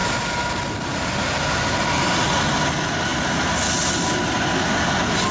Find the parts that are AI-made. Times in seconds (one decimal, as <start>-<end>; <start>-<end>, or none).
none